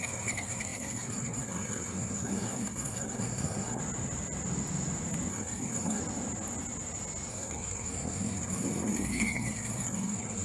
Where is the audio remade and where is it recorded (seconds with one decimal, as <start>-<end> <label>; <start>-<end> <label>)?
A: 0.0-3.8 remade; 3.8-5.3 recorded; 5.3-6.0 remade; 6.0-7.3 recorded; 7.3-10.4 remade